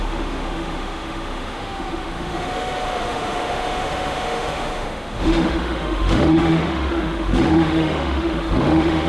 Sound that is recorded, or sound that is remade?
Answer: remade